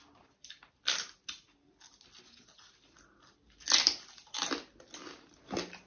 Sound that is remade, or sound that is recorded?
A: recorded